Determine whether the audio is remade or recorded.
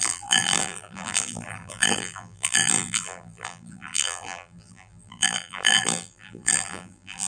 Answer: remade